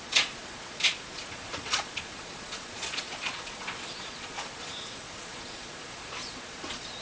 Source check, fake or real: fake